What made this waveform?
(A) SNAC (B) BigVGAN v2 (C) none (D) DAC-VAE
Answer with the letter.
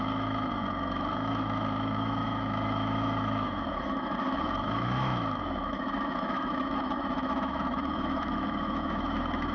D